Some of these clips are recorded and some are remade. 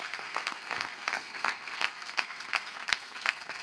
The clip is remade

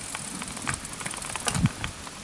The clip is recorded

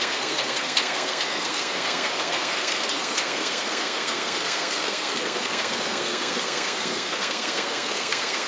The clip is remade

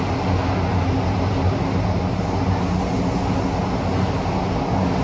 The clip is recorded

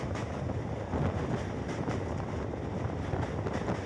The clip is recorded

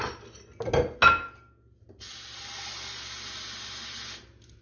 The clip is recorded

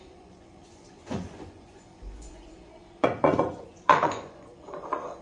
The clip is remade